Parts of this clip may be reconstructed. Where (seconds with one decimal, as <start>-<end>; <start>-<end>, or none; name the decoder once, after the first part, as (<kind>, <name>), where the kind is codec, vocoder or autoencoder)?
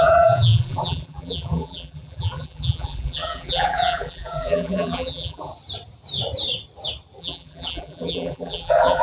0.0-5.5 (vocoder, BigVGAN v2); 7.2-9.0